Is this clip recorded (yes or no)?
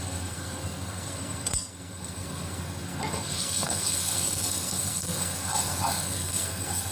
no